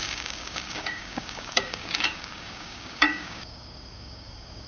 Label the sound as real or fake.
fake